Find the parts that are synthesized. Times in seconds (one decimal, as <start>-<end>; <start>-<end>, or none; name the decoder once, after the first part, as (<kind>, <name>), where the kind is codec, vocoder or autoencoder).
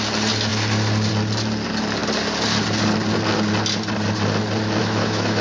4.8-5.4 (autoencoder, DAC-VAE)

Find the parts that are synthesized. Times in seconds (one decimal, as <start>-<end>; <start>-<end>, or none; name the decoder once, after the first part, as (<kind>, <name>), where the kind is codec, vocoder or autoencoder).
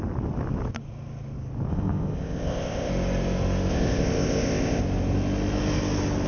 1.7-2.9 (codec, ZipCodec); 3.7-4.8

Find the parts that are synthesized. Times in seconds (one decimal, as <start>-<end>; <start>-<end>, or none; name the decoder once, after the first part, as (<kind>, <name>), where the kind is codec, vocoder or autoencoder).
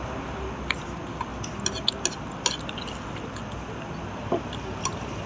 none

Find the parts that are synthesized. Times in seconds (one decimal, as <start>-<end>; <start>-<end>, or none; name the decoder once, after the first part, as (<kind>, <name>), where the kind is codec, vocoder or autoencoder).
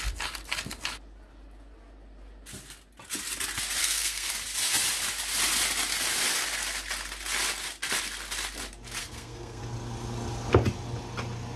3.8-4.3 (codec, SNAC); 9.0-9.6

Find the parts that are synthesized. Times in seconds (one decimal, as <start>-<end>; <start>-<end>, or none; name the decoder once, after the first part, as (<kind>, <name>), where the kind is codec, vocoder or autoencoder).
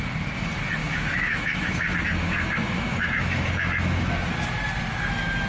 0.8-4.1 (autoencoder, DAC-VAE)